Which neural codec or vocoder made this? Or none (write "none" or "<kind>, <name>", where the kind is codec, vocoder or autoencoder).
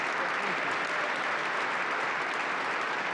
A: none